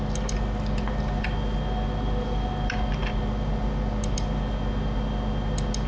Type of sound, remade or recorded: recorded